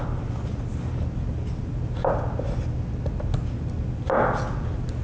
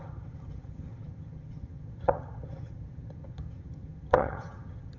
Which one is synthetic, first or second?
second